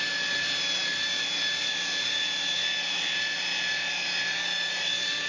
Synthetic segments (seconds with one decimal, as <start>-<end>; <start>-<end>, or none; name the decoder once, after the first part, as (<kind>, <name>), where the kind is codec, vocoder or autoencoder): none